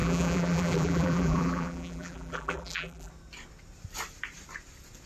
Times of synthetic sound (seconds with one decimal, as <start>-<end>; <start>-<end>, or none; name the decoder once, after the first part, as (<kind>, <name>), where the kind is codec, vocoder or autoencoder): 0.0-3.1 (vocoder, BigVGAN v2)